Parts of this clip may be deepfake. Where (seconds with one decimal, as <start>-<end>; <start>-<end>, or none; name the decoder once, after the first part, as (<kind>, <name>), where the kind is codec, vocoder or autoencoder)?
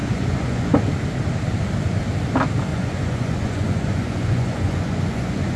0.0-0.9 (vocoder, Vocos); 2.7-5.6